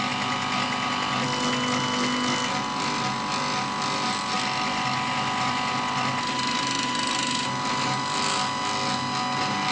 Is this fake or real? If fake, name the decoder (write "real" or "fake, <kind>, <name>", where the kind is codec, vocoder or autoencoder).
real